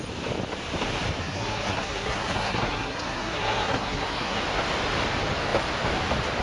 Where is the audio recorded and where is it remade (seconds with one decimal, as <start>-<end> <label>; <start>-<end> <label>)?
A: 0.0-1.2 recorded; 1.2-4.4 remade; 4.4-6.4 recorded